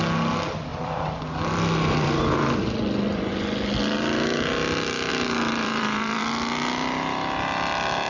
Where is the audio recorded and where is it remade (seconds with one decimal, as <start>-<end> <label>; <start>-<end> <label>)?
0.0-0.7 recorded; 0.7-3.3 remade; 3.3-5.1 recorded; 5.1-6.2 remade; 6.2-8.1 recorded

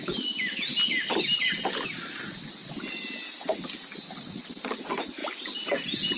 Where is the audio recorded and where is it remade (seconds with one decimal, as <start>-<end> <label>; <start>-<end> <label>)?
0.0-6.2 recorded

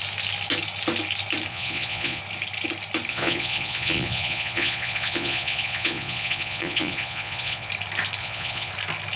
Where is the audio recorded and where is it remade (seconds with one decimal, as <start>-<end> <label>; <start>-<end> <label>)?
0.0-1.5 recorded; 1.5-2.2 remade; 2.2-3.1 recorded; 3.1-7.7 remade; 7.7-8.2 recorded; 8.2-8.7 remade; 8.7-9.2 recorded

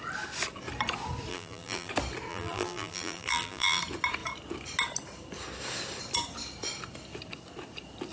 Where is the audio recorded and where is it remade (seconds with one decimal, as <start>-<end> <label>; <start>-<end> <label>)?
0.0-1.3 recorded; 1.3-1.9 remade; 1.9-2.3 recorded; 2.3-3.8 remade; 3.8-8.1 recorded

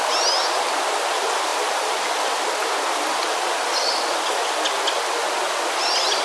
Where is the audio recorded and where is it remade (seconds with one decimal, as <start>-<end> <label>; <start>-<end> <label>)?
0.0-6.2 recorded

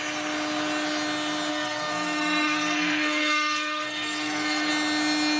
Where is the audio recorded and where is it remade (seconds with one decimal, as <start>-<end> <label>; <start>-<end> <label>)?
0.0-1.5 recorded; 1.5-4.7 remade; 4.7-5.4 recorded

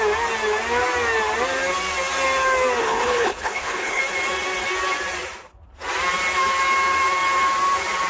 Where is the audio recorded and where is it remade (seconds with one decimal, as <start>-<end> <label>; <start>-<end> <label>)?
0.0-2.8 recorded; 2.8-4.0 remade; 4.0-8.1 recorded

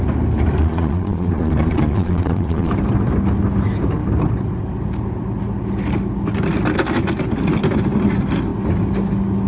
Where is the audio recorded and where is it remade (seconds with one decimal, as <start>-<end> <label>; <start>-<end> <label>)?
0.0-0.6 recorded; 0.6-2.7 remade; 2.7-9.5 recorded